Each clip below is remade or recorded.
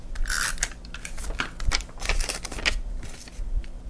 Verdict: recorded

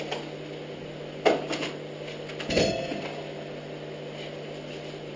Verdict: recorded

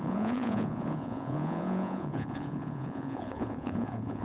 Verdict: remade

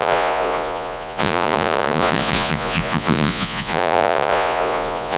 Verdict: remade